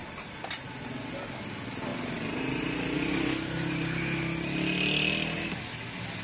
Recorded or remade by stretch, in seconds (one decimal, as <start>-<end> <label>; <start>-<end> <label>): 0.0-6.2 recorded